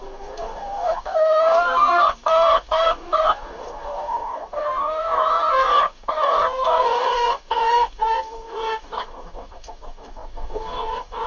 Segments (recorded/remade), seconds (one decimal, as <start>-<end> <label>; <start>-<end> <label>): 0.0-11.3 remade